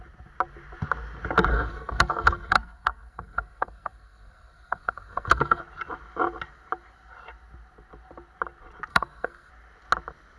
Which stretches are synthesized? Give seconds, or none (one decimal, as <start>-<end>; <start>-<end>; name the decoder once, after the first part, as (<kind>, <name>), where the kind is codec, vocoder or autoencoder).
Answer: 1.5-5.6 (codec, SNAC); 8.9-9.5